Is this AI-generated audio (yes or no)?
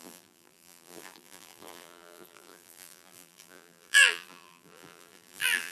yes